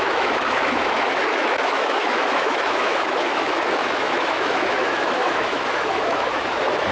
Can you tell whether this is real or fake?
fake